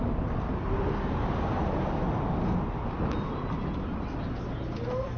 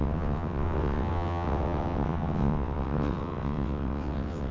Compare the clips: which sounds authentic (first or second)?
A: first